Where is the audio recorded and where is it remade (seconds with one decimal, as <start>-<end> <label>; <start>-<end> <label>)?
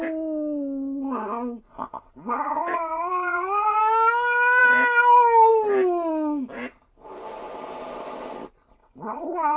0.0-1.7 recorded; 1.7-3.8 remade; 3.8-8.8 recorded; 8.8-9.6 remade